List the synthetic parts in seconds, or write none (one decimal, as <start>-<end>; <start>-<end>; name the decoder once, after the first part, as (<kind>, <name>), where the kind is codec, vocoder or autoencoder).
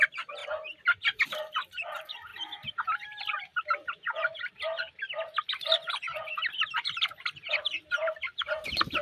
0.0-0.4 (vocoder, BigVGAN v2); 1.2-9.0